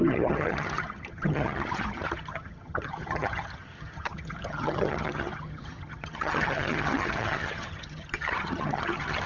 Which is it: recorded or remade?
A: remade